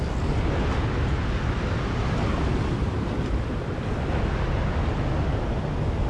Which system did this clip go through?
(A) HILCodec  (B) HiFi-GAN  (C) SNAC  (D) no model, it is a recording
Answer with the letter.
D